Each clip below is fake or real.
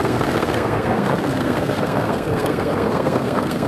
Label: fake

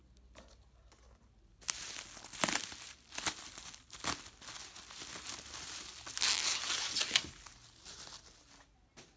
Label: real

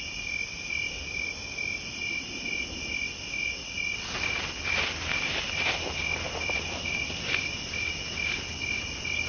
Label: real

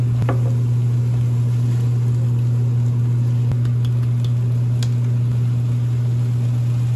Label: real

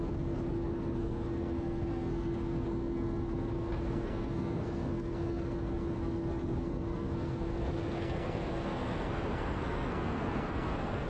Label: fake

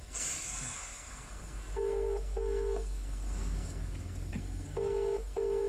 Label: fake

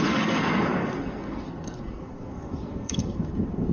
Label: fake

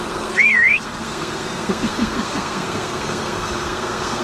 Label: fake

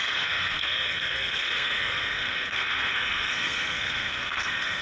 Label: fake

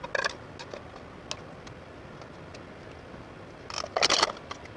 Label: real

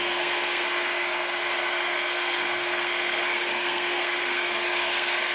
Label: fake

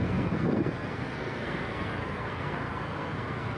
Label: fake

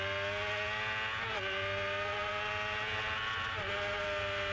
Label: real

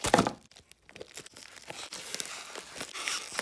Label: real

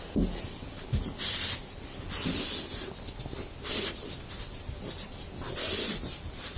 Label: real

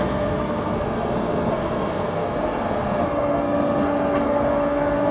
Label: fake